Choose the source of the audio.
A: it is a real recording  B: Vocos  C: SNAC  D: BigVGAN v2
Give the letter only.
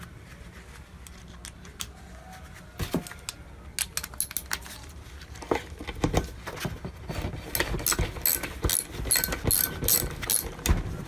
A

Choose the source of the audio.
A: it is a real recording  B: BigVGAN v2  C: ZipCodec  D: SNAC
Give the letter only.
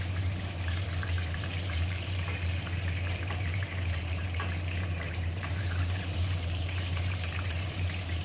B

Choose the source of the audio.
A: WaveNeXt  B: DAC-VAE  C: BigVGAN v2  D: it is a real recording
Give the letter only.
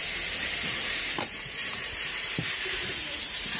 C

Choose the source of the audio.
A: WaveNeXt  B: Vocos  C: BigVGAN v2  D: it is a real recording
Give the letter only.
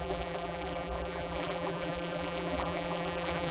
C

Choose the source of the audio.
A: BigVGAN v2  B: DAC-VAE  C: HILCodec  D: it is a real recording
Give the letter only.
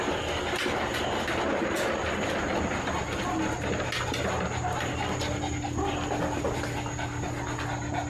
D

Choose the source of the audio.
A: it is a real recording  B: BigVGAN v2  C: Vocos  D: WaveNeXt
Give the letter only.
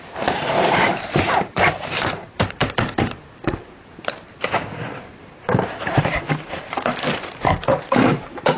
B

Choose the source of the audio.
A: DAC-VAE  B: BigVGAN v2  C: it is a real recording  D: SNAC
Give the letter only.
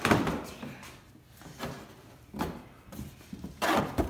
B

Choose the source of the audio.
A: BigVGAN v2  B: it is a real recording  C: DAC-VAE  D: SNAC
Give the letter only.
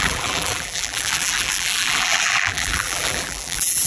A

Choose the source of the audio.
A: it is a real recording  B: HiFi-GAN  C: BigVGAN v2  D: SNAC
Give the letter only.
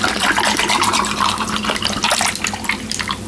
A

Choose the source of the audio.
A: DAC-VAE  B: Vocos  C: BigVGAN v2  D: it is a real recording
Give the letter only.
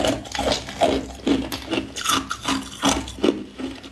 D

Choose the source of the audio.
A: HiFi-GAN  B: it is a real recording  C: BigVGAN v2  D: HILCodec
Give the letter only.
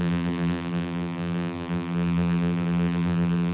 C